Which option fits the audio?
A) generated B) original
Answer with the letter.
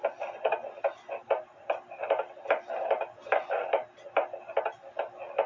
B